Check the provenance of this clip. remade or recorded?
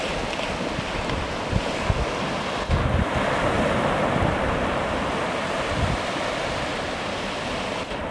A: recorded